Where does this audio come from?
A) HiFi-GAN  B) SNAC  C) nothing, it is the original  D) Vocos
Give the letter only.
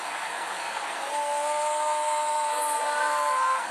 B